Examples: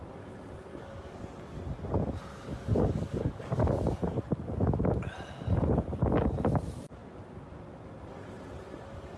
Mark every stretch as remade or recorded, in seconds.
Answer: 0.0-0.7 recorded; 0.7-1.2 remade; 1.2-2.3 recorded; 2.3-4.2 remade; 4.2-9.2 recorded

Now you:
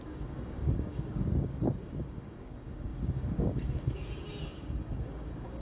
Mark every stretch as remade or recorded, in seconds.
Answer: 0.0-5.6 remade

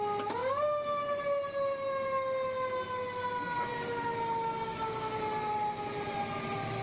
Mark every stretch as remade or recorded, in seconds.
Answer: 0.0-0.4 recorded; 0.4-1.2 remade; 1.2-3.7 recorded; 3.7-5.5 remade; 5.5-6.8 recorded

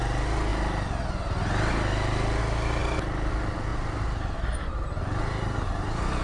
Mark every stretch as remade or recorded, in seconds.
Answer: 0.0-6.2 recorded

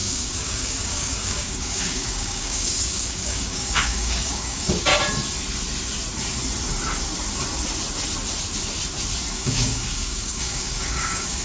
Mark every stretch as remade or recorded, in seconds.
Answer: 0.0-4.9 remade; 4.9-9.3 recorded; 9.3-11.4 remade

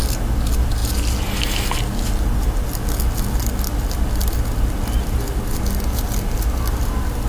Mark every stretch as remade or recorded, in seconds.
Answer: 0.0-7.3 recorded

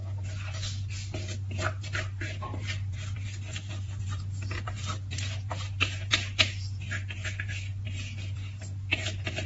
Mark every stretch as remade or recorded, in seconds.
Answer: 0.0-9.5 recorded